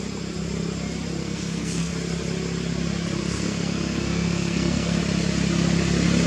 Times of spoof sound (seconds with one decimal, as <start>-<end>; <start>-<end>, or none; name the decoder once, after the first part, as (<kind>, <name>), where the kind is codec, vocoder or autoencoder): 1.2-1.9 (codec, SNAC); 3.2-5.0

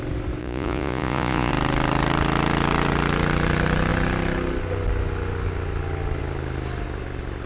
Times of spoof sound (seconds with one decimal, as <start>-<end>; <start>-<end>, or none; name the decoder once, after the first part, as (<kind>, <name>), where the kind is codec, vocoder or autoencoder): 0.4-1.5 (vocoder, Vocos)

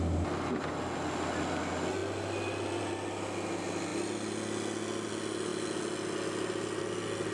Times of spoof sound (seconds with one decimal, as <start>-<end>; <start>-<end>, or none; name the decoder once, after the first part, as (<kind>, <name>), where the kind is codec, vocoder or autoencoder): none

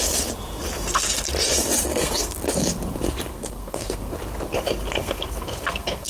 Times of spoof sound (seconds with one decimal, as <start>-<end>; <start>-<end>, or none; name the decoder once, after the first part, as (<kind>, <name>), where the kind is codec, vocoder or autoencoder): 1.9-2.4 (codec, SNAC); 3.3-4.1; 5.0-6.1